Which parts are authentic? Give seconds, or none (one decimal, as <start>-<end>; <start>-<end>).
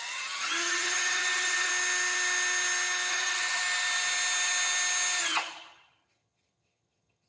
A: 1.7-3.1; 3.6-5.2